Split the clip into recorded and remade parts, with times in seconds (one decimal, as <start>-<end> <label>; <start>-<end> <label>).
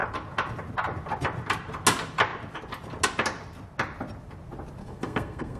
0.0-4.8 recorded; 4.8-5.6 remade